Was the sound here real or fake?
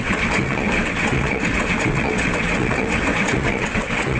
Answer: fake